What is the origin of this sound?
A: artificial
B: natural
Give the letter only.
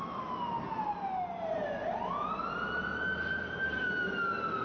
B